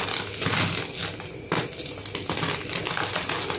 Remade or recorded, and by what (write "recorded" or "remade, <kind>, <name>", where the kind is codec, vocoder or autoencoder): recorded